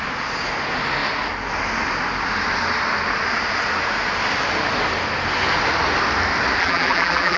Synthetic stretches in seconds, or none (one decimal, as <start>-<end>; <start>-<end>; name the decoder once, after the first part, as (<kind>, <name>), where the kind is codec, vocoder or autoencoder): 6.6-7.4 (vocoder, BigVGAN v2)

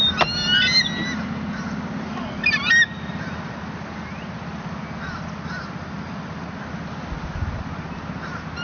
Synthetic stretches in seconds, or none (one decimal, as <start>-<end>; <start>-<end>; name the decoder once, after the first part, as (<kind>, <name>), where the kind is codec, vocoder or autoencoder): none